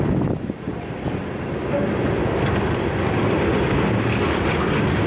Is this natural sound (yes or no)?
yes